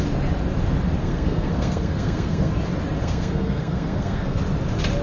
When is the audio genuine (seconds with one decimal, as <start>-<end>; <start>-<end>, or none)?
0.0-1.0; 2.5-3.0; 4.4-5.0